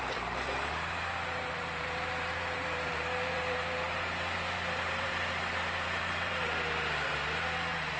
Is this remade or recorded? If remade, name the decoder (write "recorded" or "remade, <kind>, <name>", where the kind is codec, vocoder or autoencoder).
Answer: remade, vocoder, BigVGAN v2